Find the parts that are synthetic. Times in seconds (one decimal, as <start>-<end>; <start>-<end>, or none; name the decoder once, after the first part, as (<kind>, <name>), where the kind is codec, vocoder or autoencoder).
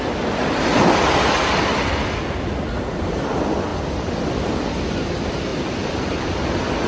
none